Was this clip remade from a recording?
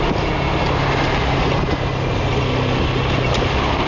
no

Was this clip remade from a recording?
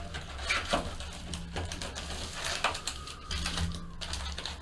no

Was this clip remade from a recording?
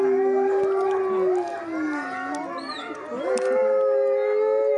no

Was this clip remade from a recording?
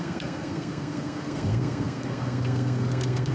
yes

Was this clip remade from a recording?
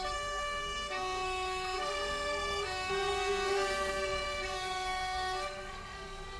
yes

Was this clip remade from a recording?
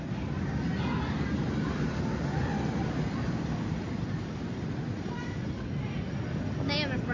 no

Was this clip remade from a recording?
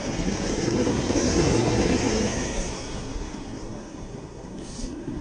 yes